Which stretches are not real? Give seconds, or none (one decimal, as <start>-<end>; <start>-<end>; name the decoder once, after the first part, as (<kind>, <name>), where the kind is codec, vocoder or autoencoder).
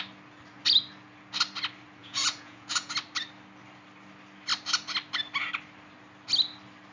2.0-2.9 (vocoder, Vocos)